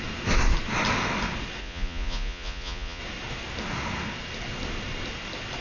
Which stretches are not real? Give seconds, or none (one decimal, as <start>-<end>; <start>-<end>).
1.6-3.0